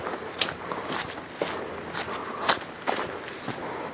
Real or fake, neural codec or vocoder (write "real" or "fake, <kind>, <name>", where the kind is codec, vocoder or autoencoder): real